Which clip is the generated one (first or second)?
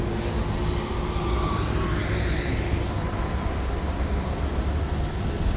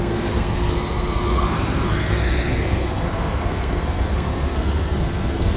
second